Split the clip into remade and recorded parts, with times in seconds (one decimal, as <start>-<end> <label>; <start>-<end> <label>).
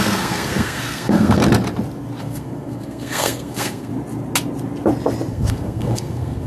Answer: 0.0-1.4 remade; 1.4-2.2 recorded; 2.2-3.9 remade; 3.9-5.3 recorded; 5.3-6.5 remade